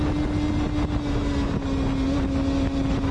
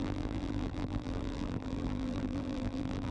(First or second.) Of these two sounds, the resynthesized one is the second